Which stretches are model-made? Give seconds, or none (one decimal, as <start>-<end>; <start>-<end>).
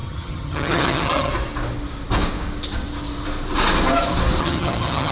0.0-1.3; 4.4-5.1